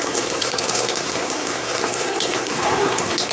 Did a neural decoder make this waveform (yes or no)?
yes